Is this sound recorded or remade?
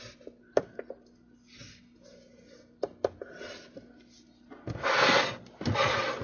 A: recorded